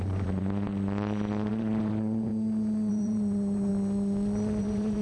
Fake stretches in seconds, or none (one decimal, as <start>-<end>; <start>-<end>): 0.0-0.7; 1.5-2.3; 2.9-3.7; 4.6-5.0

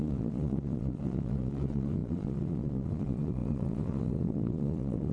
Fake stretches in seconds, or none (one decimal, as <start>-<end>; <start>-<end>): 0.0-5.1

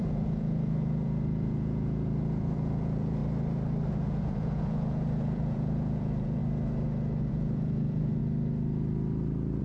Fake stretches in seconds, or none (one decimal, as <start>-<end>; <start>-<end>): 0.0-3.2; 3.9-6.4; 7.3-8.2

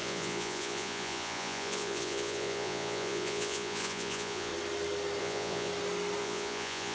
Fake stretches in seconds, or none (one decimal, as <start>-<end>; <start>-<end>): 0.0-4.5; 5.2-5.7; 6.2-6.9

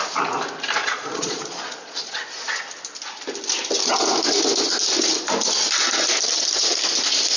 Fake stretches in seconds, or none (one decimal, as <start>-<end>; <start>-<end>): 0.8-2.2

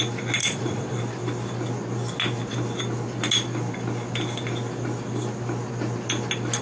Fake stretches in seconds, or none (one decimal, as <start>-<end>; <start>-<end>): 0.4-1.0

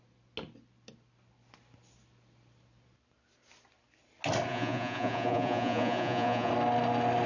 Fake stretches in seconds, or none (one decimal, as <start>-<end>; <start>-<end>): 4.5-6.5

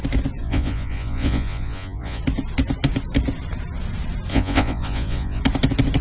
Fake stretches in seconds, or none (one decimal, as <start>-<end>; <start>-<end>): 0.4-2.2; 4.3-5.4